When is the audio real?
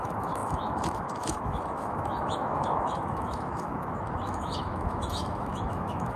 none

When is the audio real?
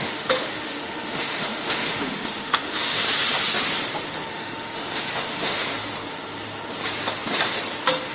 3.0-4.3; 5.7-8.1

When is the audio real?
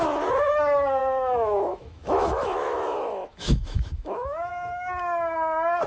0.0-1.0; 4.5-5.9